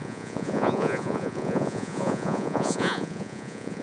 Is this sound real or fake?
fake